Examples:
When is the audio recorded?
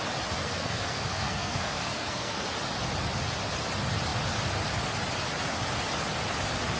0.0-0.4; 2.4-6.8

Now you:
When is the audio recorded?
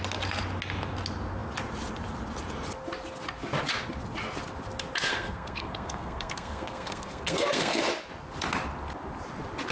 0.0-5.1; 7.8-9.7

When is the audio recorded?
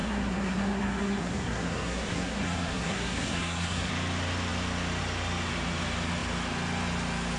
3.9-7.4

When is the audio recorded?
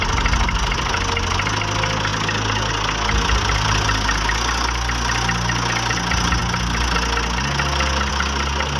0.0-8.8